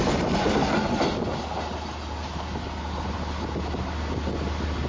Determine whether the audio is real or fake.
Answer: real